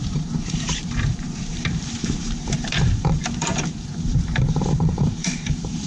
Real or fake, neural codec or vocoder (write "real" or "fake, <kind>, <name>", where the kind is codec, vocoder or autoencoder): fake, vocoder, BigVGAN v2